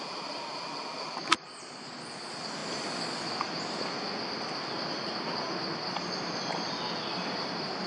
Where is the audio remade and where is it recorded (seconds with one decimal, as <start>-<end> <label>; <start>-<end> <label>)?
0.0-7.9 recorded